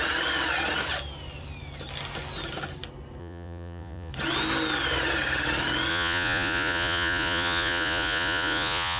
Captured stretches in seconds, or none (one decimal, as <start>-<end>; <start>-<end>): 0.0-3.2; 4.1-5.9